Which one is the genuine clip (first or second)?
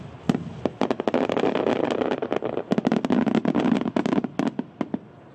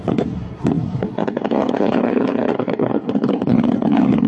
first